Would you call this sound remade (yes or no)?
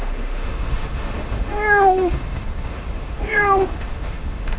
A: yes